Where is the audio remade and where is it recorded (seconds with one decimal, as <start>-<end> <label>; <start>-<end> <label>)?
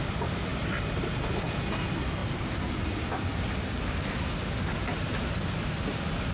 0.0-6.3 recorded